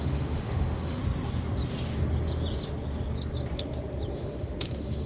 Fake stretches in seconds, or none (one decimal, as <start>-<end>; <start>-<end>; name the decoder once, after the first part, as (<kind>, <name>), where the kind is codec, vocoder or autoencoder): 0.0-1.0 (autoencoder, DAC-VAE); 4.1-5.1